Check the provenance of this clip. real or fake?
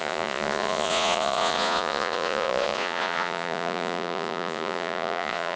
fake